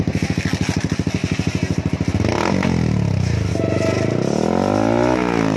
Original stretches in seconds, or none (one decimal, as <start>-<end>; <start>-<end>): 0.0-5.6

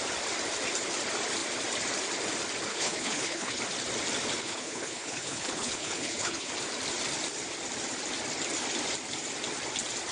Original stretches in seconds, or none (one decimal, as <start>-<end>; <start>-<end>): 0.0-2.7; 3.6-4.4; 6.5-10.1

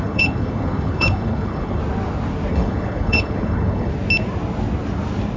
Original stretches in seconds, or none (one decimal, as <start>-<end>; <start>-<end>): 1.8-2.5; 3.9-5.4

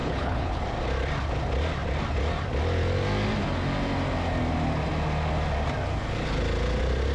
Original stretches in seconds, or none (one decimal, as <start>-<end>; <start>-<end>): 0.6-7.1

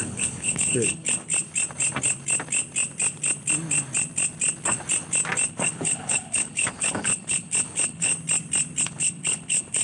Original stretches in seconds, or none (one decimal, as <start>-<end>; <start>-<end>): 1.3-5.5; 8.1-8.8

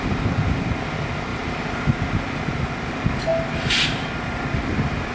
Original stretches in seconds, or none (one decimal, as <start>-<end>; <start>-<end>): 0.0-5.1

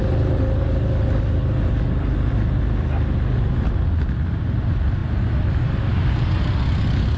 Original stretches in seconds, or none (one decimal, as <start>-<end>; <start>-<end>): 0.0-7.2

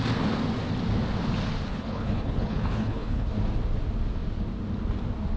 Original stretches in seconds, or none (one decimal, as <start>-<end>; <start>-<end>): 0.0-1.7; 3.3-5.4